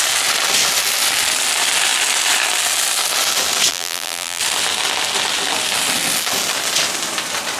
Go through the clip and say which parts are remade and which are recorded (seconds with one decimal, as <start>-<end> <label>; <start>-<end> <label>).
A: 0.0-3.7 recorded; 3.7-4.4 remade; 4.4-7.6 recorded